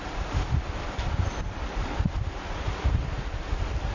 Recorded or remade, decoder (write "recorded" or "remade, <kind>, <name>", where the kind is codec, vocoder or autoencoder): recorded